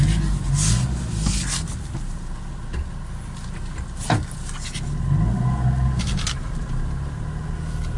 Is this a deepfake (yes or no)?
no